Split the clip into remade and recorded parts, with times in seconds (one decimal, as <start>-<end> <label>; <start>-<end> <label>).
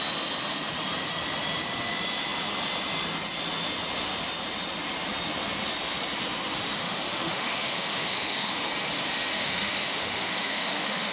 0.0-6.8 recorded; 6.8-8.7 remade; 8.7-9.3 recorded; 9.3-11.1 remade